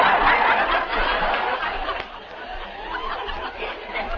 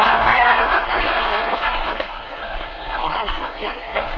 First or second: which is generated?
second